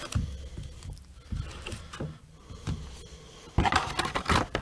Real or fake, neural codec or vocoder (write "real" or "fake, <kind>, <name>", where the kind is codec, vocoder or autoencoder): real